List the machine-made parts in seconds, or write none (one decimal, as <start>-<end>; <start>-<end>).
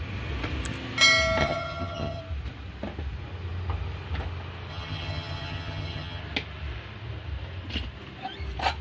1.4-2.2; 4.7-6.2